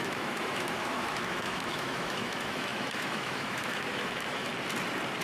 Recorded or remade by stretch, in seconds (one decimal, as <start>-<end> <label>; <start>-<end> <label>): 0.0-4.5 remade; 4.5-5.2 recorded